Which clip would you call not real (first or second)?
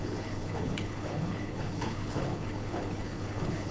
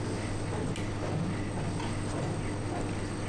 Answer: first